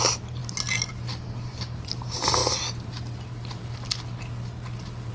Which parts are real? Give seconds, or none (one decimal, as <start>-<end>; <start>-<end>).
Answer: 0.4-1.5; 2.4-5.1